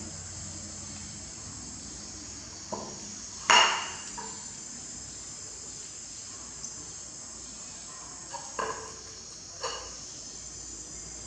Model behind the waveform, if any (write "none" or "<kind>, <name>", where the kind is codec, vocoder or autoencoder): vocoder, BigVGAN v2